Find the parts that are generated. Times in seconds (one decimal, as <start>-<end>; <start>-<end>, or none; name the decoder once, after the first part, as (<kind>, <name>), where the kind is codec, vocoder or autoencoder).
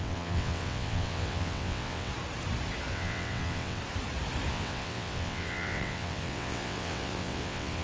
0.0-2.1 (vocoder, WaveNeXt); 2.9-3.8; 4.5-7.8